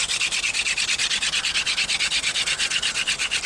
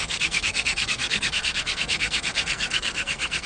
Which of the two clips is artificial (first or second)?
second